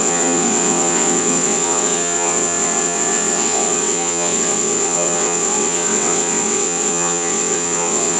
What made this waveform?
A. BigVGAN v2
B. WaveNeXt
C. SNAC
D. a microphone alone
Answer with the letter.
B